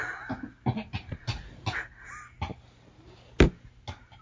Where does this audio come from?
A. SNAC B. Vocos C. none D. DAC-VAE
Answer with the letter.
C